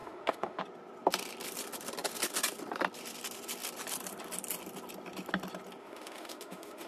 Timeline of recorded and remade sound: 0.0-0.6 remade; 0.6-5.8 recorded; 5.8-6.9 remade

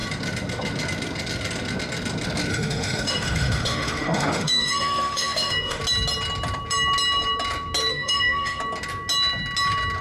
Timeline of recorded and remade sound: 0.0-2.5 recorded; 2.5-5.8 remade; 5.8-7.9 recorded; 7.9-8.6 remade; 8.6-10.0 recorded

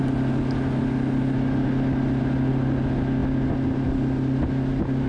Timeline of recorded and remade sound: 0.0-5.1 recorded

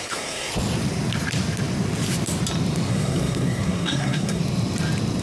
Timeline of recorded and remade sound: 0.0-0.5 remade; 0.5-2.9 recorded; 2.9-4.4 remade; 4.4-5.2 recorded

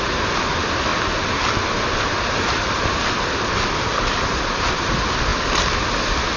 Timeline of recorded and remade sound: 0.0-6.4 recorded

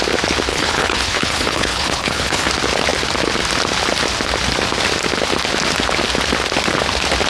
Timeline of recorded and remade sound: 0.0-0.5 recorded; 0.5-2.5 remade; 2.5-7.3 recorded

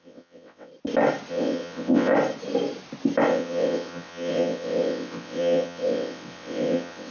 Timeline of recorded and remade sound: 0.0-0.7 remade; 0.7-1.3 recorded; 1.3-2.1 remade; 2.1-3.3 recorded; 3.3-7.1 remade